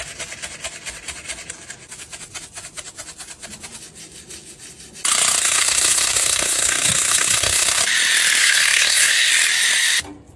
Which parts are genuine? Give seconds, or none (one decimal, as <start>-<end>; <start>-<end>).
0.0-5.4; 7.8-8.4; 9.3-10.4